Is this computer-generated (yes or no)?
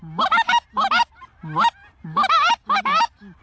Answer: no